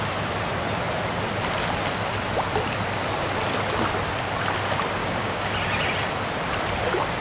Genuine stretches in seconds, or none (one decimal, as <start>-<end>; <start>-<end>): 0.0-5.0; 5.5-7.2